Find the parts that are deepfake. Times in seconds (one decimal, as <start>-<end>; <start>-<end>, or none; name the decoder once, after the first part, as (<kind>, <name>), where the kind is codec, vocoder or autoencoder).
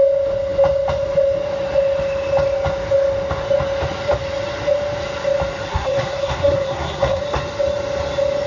5.7-7.2 (codec, SNAC)